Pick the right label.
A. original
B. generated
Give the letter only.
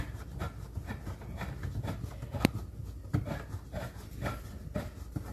A